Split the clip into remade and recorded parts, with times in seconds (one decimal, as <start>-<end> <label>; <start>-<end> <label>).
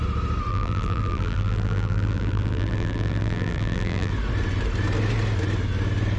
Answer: 0.0-0.5 recorded; 0.5-4.1 remade; 4.1-6.2 recorded